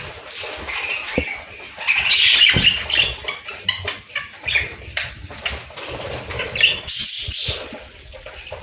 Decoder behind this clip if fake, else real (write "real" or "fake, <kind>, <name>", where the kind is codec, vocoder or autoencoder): real